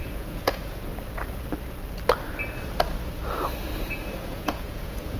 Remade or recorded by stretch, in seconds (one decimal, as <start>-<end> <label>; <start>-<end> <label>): 0.0-0.9 remade; 0.9-3.9 recorded; 3.9-5.2 remade